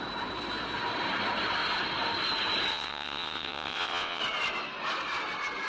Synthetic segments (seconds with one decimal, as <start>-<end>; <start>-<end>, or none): 2.7-4.2